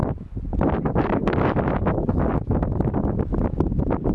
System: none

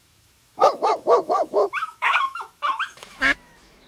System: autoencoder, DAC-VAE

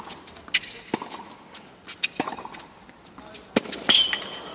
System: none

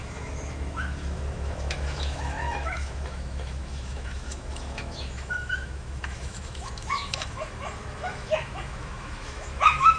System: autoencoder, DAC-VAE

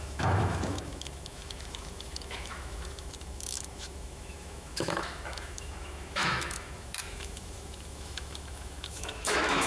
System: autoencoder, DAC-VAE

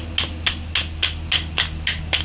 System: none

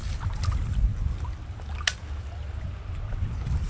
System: none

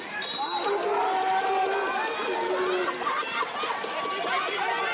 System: none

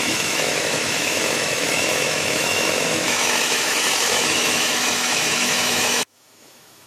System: autoencoder, DAC-VAE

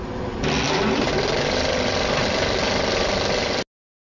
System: none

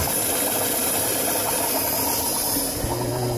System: none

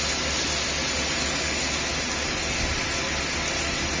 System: none